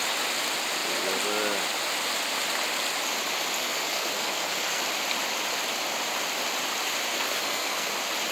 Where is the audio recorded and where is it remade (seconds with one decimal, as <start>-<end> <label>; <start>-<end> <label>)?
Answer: 0.0-3.6 recorded; 3.6-4.8 remade; 4.8-7.1 recorded; 7.1-7.9 remade; 7.9-8.3 recorded